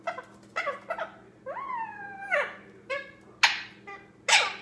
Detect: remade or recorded recorded